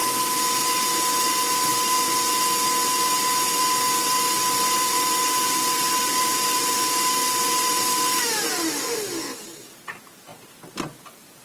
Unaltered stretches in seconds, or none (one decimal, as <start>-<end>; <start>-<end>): 0.0-0.6; 1.7-3.6; 10.3-11.4